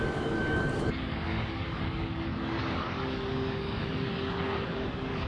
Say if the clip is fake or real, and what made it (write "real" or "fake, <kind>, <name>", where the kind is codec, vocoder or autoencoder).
fake, codec, DAC